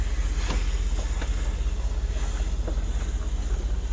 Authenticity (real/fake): real